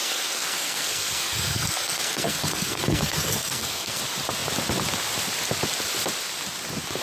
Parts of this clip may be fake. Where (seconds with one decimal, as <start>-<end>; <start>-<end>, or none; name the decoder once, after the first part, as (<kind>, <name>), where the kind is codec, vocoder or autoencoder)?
0.0-4.0 (codec, SNAC)